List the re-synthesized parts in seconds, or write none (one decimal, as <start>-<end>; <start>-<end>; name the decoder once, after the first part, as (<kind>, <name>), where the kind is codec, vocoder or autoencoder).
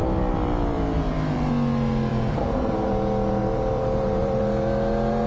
0.0-1.5 (vocoder, BigVGAN v2); 2.1-2.9; 3.4-4.4